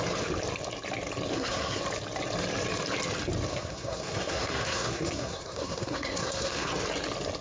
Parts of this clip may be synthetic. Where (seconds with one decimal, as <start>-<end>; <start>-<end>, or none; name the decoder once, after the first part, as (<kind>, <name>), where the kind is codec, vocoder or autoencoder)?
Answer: 1.3-1.8 (codec, SNAC); 3.5-6.7